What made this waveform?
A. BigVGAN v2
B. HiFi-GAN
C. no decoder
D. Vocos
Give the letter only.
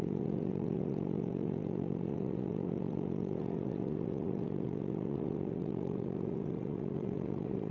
D